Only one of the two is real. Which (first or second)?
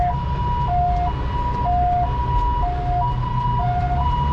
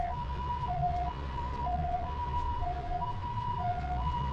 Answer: first